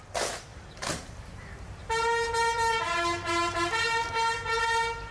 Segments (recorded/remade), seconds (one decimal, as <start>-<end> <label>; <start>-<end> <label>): 0.0-0.5 recorded; 0.5-2.3 remade; 2.3-5.1 recorded